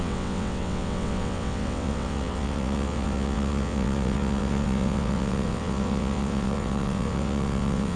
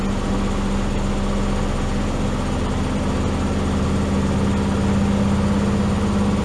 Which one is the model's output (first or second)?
first